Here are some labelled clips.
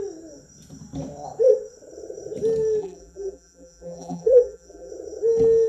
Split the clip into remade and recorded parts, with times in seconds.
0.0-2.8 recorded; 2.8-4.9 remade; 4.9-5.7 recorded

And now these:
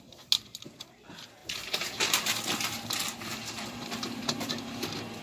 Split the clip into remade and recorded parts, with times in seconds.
0.0-1.4 recorded; 1.4-4.5 remade; 4.5-5.2 recorded

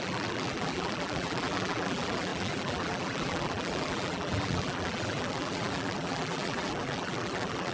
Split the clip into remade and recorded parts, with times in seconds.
0.0-7.7 remade

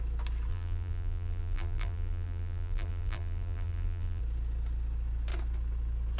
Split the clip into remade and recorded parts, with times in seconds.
0.0-0.5 recorded; 0.5-4.2 remade; 4.2-6.2 recorded

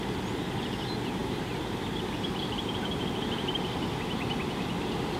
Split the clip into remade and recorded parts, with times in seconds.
0.0-1.2 recorded; 1.2-4.3 remade; 4.3-5.2 recorded

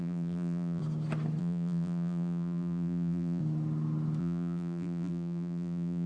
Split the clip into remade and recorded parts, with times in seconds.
0.0-0.8 remade; 0.8-1.4 recorded; 1.4-3.4 remade; 3.4-4.2 recorded; 4.2-6.1 remade

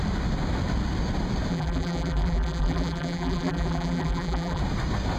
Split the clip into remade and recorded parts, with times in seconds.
0.0-1.5 recorded; 1.5-4.6 remade; 4.6-5.2 recorded